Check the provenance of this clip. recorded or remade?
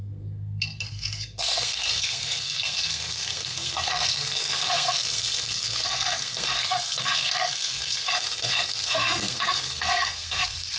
remade